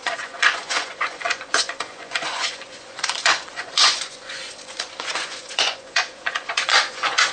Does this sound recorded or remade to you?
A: remade